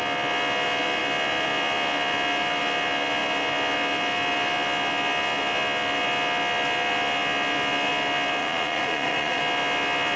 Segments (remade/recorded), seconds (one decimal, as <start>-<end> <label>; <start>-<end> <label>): 0.0-8.4 recorded; 8.4-9.4 remade; 9.4-10.2 recorded